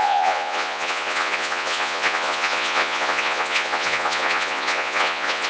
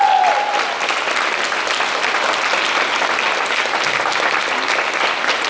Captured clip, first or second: second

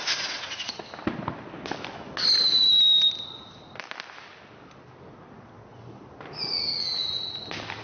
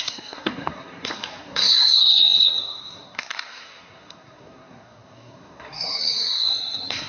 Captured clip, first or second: first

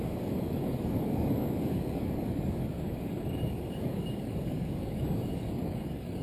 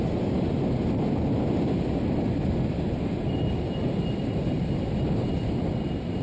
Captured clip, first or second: second